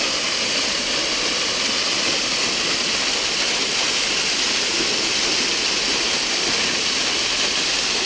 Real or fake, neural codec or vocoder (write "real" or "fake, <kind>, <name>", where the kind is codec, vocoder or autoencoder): real